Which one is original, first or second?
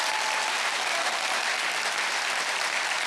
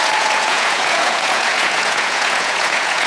first